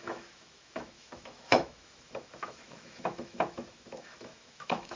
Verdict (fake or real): fake